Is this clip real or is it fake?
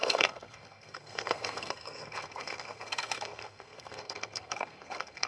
fake